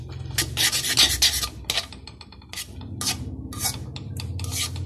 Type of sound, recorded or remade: recorded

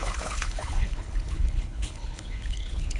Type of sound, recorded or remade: remade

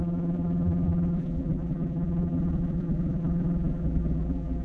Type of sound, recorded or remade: remade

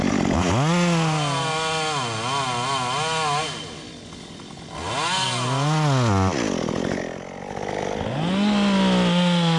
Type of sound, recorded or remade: recorded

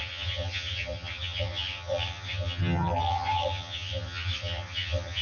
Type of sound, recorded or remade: remade